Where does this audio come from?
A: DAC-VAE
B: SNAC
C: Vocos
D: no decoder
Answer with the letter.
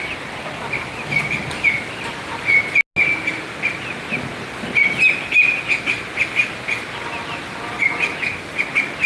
D